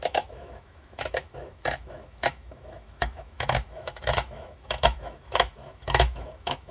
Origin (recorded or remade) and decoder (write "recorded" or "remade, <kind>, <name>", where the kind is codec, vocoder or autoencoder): remade, autoencoder, DAC-VAE